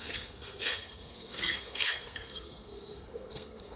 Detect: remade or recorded remade